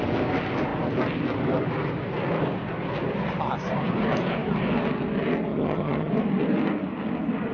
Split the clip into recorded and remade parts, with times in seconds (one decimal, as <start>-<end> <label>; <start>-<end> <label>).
0.0-5.5 recorded; 5.5-6.1 remade; 6.1-7.5 recorded